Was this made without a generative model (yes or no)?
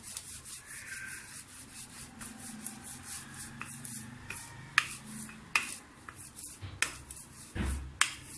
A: yes